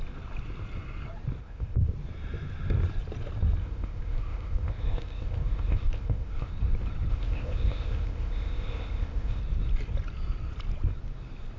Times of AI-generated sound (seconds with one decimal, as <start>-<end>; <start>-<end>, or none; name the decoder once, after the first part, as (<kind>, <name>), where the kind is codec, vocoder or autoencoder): 1.4-1.9 (codec, ZipCodec); 3.6-6.5; 7.1-9.4